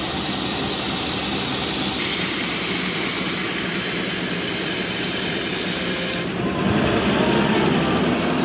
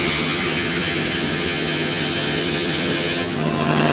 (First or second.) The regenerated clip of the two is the second